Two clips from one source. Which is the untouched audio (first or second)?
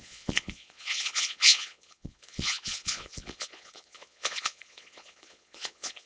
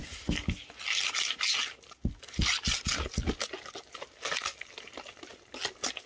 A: second